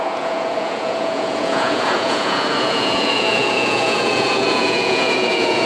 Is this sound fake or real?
fake